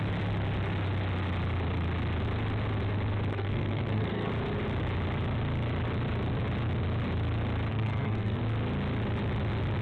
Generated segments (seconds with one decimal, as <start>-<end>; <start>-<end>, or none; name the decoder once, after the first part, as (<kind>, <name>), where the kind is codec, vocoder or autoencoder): 3.3-4.3 (codec, SNAC); 7.7-8.4